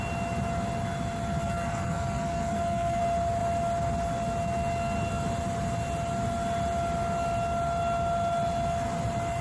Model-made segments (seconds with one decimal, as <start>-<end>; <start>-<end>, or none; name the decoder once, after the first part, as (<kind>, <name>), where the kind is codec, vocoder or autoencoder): 1.4-3.0 (codec, SNAC)